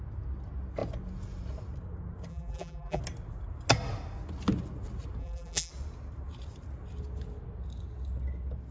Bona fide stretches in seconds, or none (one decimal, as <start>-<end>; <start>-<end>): 0.0-2.3; 3.0-5.2; 5.7-8.7